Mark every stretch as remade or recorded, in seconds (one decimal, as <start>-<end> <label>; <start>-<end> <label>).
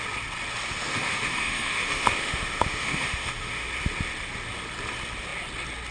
0.0-0.9 recorded; 0.9-3.7 remade; 3.7-5.9 recorded